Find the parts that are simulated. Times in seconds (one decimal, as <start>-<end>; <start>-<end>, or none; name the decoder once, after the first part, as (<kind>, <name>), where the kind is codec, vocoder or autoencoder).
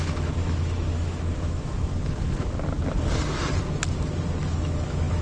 0.0-1.9 (autoencoder, DAC-VAE); 4.4-5.2